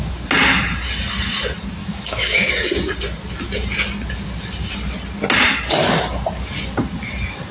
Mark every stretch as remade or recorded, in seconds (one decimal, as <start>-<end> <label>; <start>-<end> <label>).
0.0-1.8 recorded; 1.8-2.5 remade; 2.5-7.5 recorded